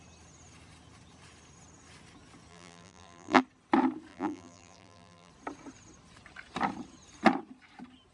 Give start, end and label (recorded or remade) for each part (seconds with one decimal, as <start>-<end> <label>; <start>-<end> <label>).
0.0-2.5 recorded; 2.5-3.4 remade; 3.4-4.1 recorded; 4.1-5.3 remade; 5.3-8.1 recorded